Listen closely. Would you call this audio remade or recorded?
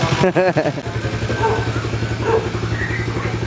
recorded